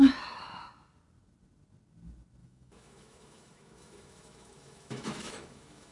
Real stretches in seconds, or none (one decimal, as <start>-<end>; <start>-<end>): 0.0-2.4